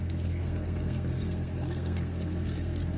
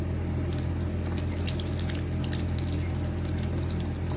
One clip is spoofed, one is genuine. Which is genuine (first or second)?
second